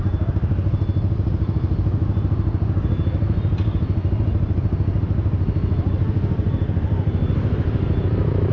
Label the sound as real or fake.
real